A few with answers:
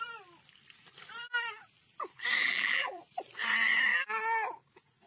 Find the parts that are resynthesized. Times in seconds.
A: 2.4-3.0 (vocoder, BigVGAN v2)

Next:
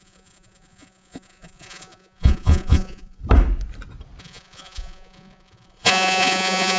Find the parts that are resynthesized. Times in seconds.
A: 0.0-3.2 (vocoder, Vocos); 4.2-6.8

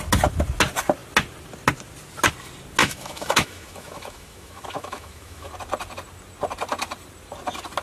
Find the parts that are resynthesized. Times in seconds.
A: 2.8-5.5 (autoencoder, DAC-VAE)

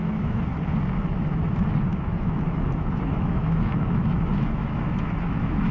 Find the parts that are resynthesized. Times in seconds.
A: 0.0-0.5 (autoencoder, DAC-VAE); 1.1-5.7

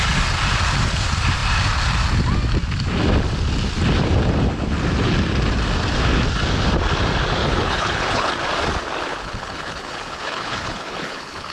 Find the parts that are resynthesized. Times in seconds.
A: 7.4-8.3 (codec, HILCodec); 9.1-11.5